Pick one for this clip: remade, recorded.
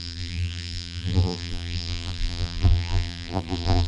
remade